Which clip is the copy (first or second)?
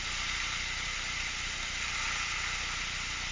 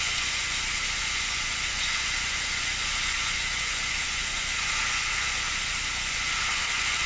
second